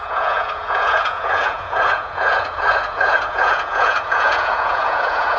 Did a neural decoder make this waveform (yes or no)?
yes